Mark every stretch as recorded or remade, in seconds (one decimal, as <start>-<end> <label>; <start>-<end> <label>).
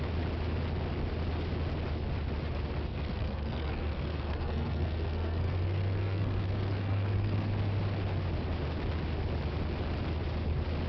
0.0-2.9 recorded; 2.9-7.5 remade; 7.5-10.9 recorded